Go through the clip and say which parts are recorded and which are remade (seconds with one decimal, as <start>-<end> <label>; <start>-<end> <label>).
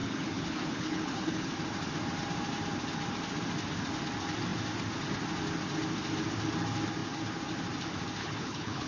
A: 0.0-1.5 remade; 1.5-8.2 recorded; 8.2-8.9 remade